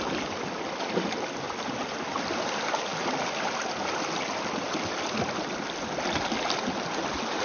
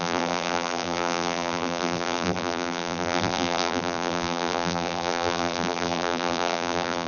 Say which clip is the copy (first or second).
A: second